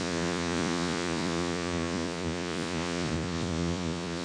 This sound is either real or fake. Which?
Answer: fake